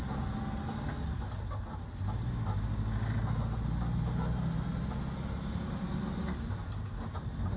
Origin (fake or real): real